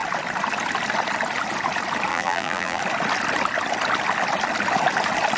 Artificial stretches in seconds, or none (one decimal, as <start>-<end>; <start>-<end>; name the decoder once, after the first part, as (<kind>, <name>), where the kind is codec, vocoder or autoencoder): 2.1-2.8 (vocoder, BigVGAN v2)